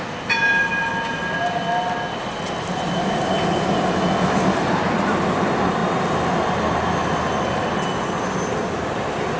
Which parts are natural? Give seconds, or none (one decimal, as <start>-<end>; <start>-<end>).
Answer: 0.0-9.4